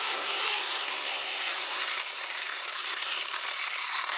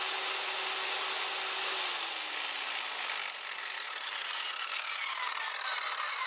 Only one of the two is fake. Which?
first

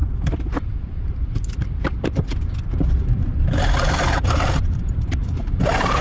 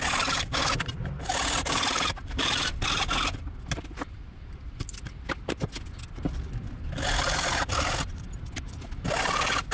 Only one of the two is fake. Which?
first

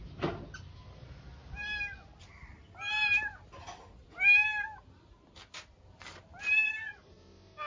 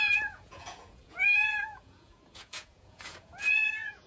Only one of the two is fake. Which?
second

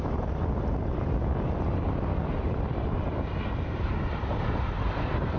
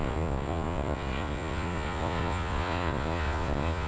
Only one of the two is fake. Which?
second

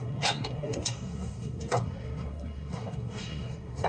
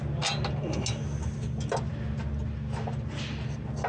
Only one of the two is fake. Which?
first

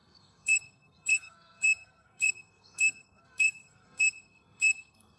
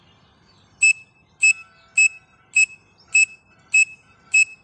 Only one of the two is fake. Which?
first